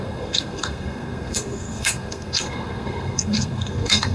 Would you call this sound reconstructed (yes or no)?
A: yes